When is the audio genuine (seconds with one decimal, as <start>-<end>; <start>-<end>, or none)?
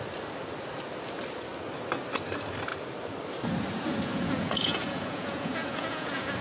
0.0-4.1